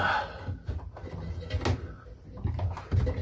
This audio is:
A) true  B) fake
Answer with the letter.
A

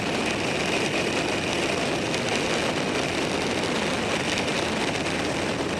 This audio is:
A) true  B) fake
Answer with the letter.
A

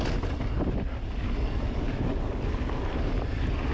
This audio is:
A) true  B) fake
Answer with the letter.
A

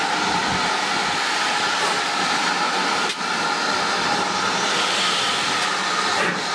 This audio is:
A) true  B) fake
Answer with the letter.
A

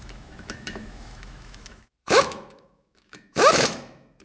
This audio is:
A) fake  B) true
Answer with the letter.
A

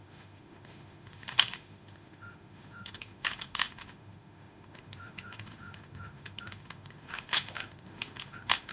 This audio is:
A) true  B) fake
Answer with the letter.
B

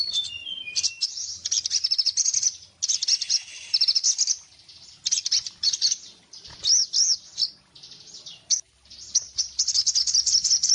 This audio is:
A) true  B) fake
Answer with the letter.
A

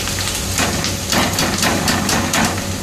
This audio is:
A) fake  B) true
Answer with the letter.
B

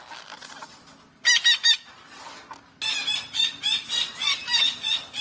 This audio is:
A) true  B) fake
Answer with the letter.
A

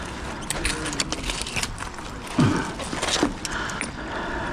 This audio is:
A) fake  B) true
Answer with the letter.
B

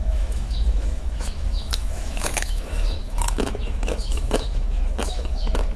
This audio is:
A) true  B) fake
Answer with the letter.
B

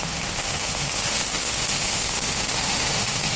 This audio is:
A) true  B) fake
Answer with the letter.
B